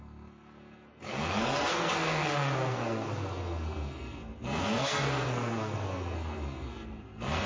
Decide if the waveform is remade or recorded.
remade